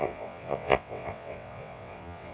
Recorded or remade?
remade